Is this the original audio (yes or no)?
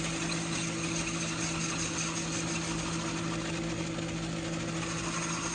yes